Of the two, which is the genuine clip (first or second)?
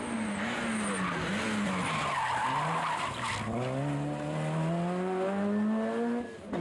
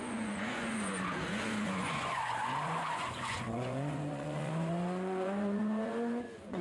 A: first